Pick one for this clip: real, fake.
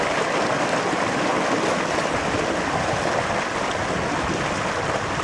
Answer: real